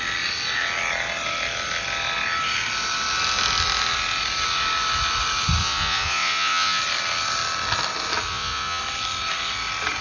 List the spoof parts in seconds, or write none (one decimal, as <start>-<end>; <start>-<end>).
5.6-6.8; 8.3-8.8